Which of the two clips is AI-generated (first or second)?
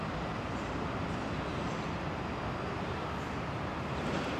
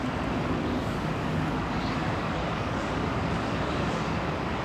second